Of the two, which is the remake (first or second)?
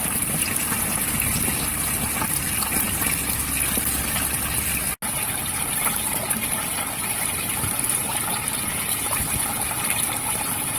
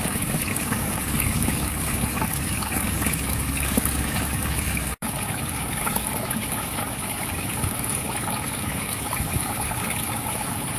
second